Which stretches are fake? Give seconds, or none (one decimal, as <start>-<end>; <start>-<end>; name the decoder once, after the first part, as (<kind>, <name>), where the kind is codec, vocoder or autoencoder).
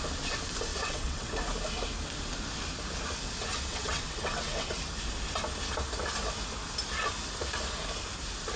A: 0.7-1.3 (vocoder, WaveNeXt); 3.7-4.8